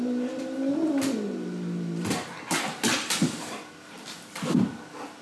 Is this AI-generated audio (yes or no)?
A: no